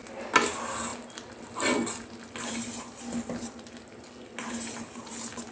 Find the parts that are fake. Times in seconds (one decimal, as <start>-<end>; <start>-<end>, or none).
none